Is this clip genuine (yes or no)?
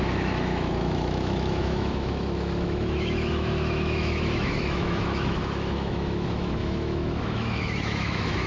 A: no